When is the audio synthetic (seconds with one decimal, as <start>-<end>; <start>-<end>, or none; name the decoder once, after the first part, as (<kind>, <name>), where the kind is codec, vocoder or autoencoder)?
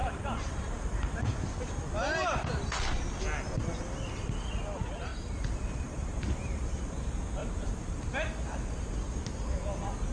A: 0.0-1.6 (vocoder, BigVGAN v2); 5.1-6.2; 7.4-8.1